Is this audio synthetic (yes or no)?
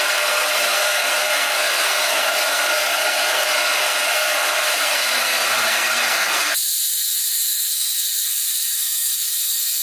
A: yes